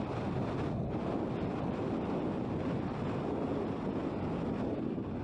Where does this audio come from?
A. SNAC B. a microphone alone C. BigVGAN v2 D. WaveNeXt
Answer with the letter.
B